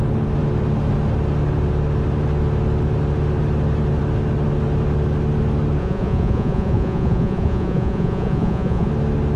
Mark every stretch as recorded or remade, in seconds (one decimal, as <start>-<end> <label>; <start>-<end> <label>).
0.0-5.8 recorded; 5.8-8.9 remade; 8.9-9.4 recorded